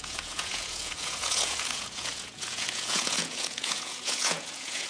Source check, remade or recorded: remade